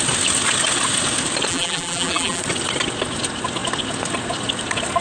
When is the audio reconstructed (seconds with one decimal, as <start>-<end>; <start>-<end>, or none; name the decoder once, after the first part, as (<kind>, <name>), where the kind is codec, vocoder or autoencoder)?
1.5-2.4 (vocoder, BigVGAN v2)